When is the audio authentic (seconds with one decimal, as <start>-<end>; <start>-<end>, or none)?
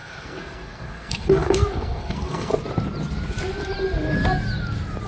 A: 2.5-5.1